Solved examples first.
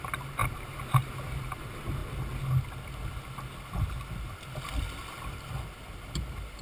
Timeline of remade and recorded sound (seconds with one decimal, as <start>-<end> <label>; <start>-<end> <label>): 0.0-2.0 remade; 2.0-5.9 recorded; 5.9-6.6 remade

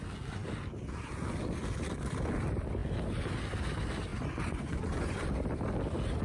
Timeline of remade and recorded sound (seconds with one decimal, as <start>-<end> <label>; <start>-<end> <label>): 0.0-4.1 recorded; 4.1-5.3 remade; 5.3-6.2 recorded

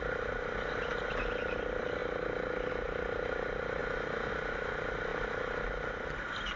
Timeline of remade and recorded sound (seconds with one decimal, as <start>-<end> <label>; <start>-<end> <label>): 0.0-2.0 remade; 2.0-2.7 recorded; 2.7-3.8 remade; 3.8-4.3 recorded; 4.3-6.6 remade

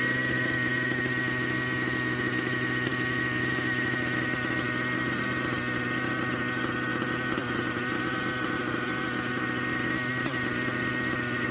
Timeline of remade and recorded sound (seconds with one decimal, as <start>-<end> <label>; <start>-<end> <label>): 0.0-11.5 recorded

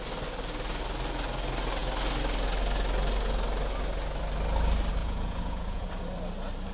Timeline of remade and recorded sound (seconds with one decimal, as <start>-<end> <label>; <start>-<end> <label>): 0.0-5.0 recorded; 5.0-5.9 remade; 5.9-6.7 recorded